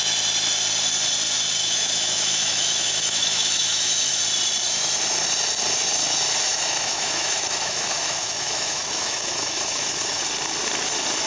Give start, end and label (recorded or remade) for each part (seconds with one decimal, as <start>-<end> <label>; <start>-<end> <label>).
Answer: 0.0-1.6 recorded; 1.6-4.2 remade; 4.2-6.5 recorded; 6.5-10.2 remade; 10.2-11.3 recorded